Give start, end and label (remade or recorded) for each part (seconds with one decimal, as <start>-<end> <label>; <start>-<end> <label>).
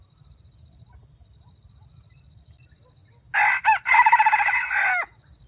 0.0-5.5 recorded